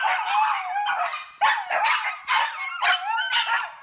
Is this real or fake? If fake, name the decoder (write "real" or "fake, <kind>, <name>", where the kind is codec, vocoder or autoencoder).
real